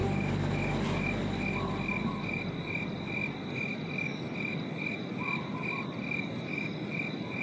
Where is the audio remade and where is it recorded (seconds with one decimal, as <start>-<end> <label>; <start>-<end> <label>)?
0.0-7.4 recorded